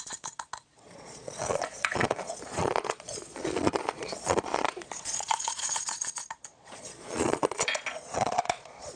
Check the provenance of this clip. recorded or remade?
remade